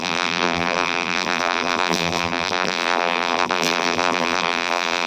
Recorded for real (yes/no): no